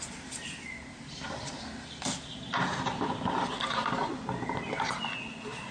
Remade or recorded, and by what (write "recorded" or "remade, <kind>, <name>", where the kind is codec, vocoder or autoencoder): recorded